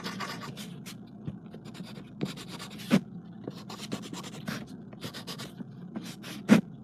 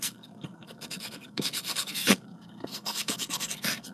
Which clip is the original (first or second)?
first